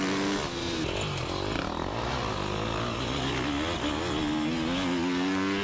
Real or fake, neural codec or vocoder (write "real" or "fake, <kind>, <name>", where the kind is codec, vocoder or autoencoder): real